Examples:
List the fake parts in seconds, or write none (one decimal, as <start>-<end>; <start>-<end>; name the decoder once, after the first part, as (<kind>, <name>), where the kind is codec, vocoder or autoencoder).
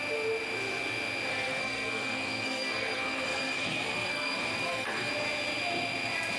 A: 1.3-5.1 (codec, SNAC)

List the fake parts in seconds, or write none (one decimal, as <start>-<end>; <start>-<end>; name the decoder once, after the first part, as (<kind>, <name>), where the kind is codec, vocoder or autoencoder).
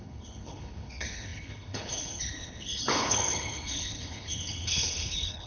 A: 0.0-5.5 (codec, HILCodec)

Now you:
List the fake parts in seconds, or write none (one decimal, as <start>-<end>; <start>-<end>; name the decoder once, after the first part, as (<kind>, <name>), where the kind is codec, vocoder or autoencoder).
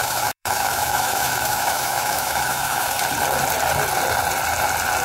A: 0.0-3.0 (autoencoder, DAC-VAE)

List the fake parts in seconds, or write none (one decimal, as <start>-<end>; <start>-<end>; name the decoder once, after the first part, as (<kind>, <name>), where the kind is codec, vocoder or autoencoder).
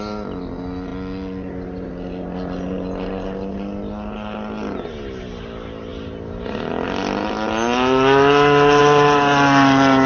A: none